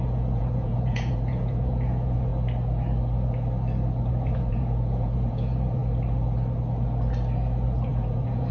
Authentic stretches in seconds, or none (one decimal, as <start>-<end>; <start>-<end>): 2.3-4.1; 5.8-7.9